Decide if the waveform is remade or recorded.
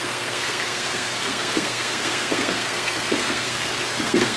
remade